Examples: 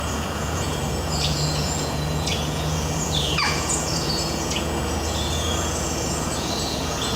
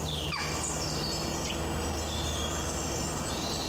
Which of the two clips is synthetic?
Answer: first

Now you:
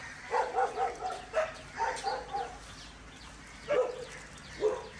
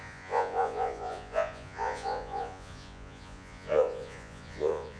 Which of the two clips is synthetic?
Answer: second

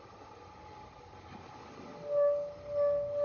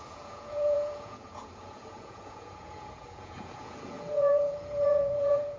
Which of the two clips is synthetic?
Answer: second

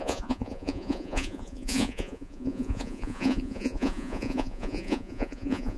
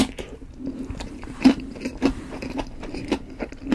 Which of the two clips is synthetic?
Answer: first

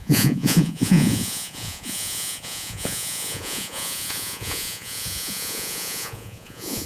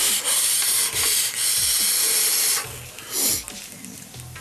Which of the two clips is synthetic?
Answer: first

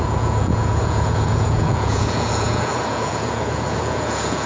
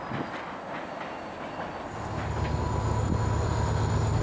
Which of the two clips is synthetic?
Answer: first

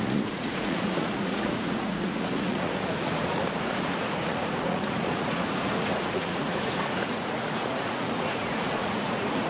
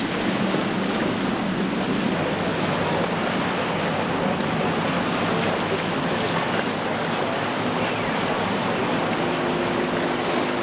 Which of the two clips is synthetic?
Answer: first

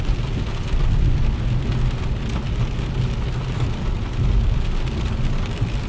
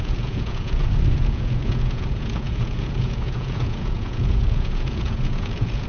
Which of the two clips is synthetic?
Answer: second